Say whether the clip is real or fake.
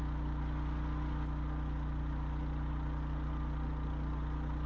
real